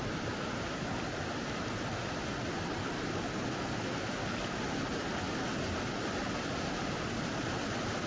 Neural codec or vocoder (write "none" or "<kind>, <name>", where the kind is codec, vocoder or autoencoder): none